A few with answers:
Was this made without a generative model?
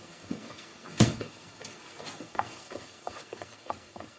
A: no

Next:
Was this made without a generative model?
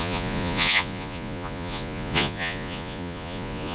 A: no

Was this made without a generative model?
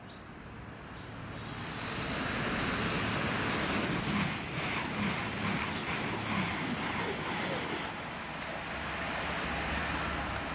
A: yes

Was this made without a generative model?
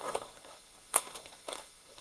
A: no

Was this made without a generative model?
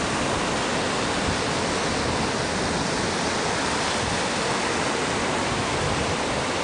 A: yes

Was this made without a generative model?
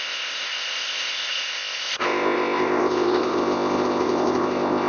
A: no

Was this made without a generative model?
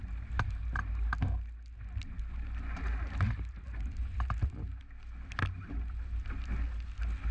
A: yes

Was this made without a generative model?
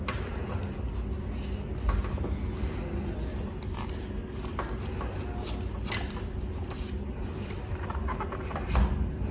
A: yes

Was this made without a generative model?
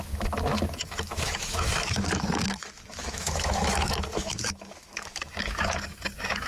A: no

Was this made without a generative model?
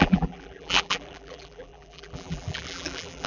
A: no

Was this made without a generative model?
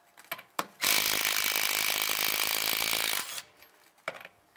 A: yes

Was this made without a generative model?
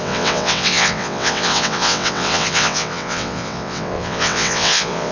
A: no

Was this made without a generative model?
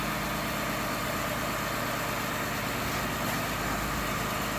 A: yes